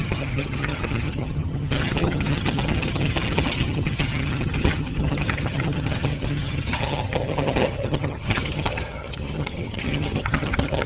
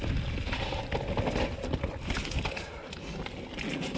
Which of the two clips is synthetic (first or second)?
first